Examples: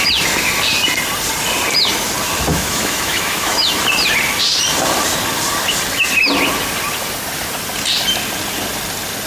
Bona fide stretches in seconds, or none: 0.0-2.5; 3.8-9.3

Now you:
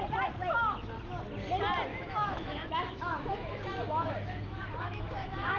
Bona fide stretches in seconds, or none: 0.0-1.9

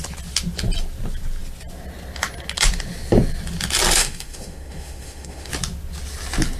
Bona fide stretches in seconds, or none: 0.0-4.0; 5.5-6.6

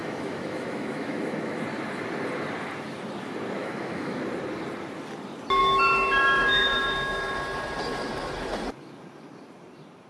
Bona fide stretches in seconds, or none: 1.6-3.6; 4.2-5.6; 7.4-10.1

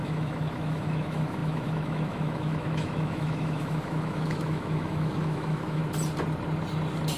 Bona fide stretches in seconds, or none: 5.8-7.2

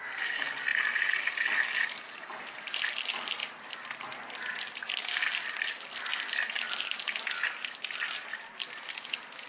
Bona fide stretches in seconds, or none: 0.0-9.5